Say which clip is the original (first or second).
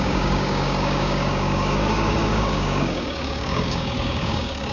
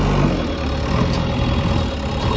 second